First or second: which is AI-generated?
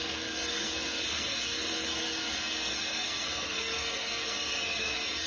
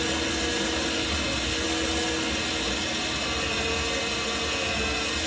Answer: first